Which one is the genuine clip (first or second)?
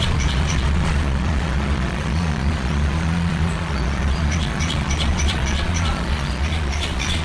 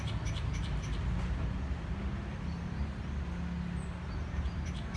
second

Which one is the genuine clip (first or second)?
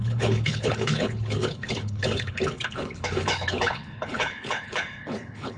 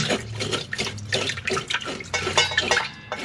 second